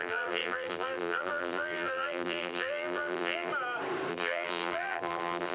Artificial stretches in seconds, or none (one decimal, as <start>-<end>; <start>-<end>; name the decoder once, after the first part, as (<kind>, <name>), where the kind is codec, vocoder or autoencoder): 0.0-3.5 (vocoder, BigVGAN v2); 4.1-5.5